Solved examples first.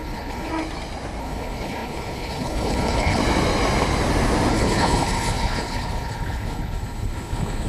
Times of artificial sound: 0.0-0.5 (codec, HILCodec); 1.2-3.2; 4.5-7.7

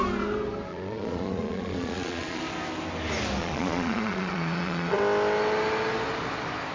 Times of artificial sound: 0.7-2.4 (vocoder, Vocos); 3.4-5.0

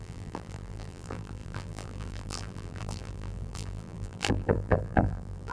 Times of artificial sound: 0.0-5.5 (vocoder, BigVGAN v2)